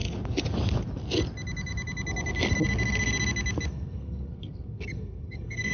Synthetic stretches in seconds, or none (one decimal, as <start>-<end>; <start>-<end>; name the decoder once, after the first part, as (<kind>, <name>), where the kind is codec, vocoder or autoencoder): 3.7-5.7 (codec, SNAC)